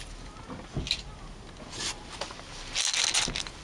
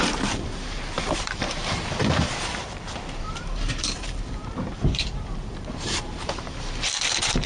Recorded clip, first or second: first